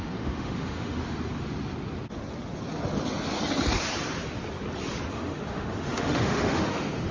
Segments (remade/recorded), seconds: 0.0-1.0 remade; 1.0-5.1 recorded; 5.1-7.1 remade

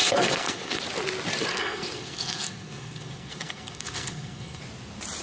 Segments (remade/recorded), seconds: 0.0-0.8 remade; 0.8-1.5 recorded; 1.5-4.6 remade; 4.6-5.2 recorded

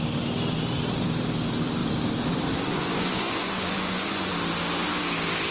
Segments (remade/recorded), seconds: 0.0-2.7 recorded; 2.7-4.3 remade; 4.3-5.5 recorded

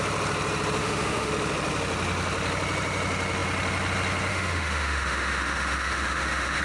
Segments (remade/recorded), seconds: 0.0-0.8 recorded; 0.8-1.3 remade; 1.3-4.3 recorded; 4.3-6.6 remade

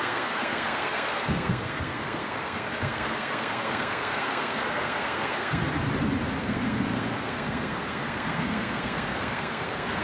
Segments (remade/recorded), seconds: 0.0-5.6 remade; 5.6-6.4 recorded; 6.4-10.0 remade

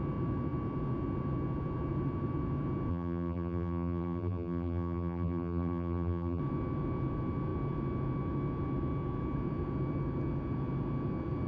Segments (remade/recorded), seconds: 0.0-2.9 recorded; 2.9-6.4 remade; 6.4-11.5 recorded

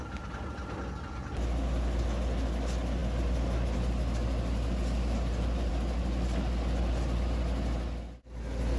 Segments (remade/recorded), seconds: 0.0-8.8 recorded